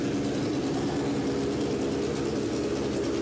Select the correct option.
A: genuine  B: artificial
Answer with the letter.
A